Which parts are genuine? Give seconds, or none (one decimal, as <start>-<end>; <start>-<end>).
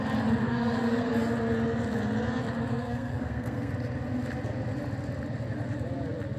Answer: 0.0-0.4; 1.1-2.7; 3.7-6.4